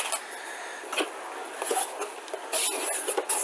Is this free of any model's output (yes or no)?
yes